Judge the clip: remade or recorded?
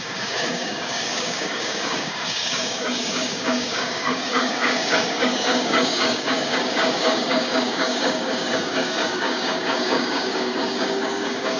remade